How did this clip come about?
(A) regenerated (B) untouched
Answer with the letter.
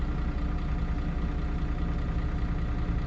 B